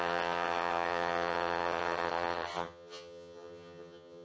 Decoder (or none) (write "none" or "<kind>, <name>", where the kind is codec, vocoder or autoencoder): vocoder, HiFi-GAN